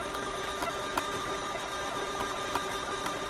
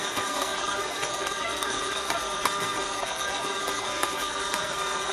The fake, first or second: second